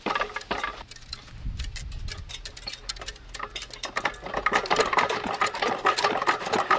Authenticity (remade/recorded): recorded